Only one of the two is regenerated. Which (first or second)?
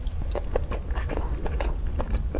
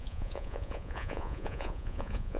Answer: second